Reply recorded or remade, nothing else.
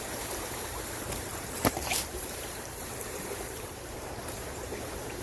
remade